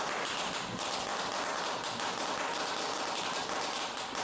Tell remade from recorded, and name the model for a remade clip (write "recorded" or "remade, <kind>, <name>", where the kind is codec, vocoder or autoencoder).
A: recorded